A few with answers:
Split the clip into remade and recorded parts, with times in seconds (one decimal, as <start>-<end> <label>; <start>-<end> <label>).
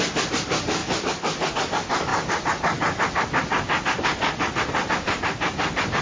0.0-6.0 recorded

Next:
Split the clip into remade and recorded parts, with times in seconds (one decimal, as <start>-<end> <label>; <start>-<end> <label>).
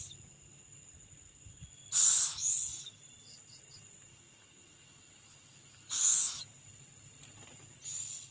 0.0-2.3 recorded; 2.3-3.0 remade; 3.0-4.1 recorded; 4.1-6.5 remade; 6.5-8.3 recorded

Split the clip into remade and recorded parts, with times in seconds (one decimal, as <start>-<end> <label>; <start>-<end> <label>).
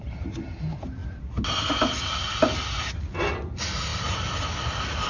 0.0-5.1 recorded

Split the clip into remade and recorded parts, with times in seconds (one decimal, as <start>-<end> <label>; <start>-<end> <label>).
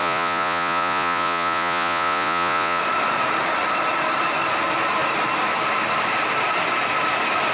0.0-2.8 remade; 2.8-7.5 recorded